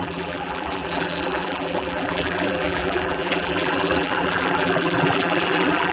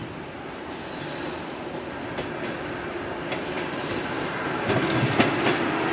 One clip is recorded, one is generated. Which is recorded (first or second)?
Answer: second